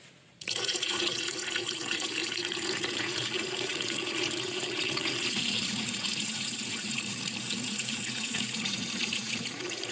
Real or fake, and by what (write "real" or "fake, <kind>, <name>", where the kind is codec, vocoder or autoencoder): fake, vocoder, Vocos